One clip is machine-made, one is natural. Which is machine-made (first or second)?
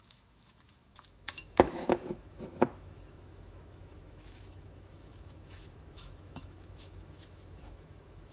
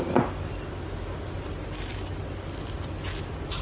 first